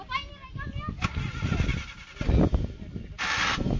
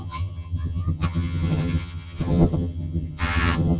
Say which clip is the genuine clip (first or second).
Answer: first